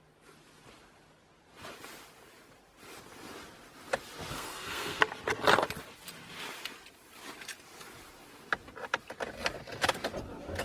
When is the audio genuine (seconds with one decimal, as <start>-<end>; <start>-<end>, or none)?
0.0-4.3; 5.0-10.6